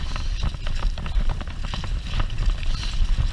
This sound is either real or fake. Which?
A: real